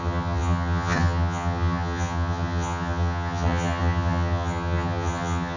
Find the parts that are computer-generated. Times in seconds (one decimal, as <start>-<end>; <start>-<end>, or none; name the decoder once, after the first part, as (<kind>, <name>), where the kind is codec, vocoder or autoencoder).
0.0-5.6 (vocoder, HiFi-GAN)